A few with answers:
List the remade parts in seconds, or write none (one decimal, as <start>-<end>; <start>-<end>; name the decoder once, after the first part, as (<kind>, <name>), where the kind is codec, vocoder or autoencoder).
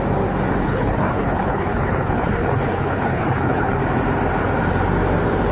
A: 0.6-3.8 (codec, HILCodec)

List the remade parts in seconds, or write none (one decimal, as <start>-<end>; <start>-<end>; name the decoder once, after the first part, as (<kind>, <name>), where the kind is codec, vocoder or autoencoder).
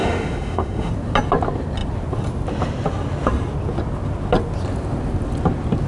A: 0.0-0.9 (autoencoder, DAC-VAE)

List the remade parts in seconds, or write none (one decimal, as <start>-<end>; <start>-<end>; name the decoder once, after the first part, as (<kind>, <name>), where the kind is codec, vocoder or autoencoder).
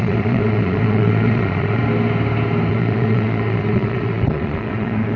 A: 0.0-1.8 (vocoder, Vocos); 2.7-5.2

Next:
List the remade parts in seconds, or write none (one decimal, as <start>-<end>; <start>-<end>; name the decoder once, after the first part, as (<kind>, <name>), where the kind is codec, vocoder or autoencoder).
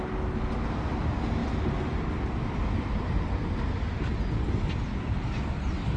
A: none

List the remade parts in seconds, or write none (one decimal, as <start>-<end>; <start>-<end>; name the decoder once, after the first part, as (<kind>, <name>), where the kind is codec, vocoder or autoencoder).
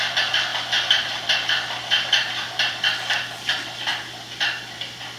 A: none